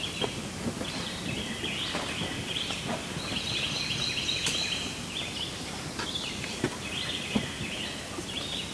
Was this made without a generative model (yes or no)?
yes